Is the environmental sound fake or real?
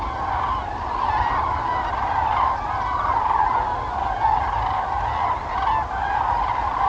real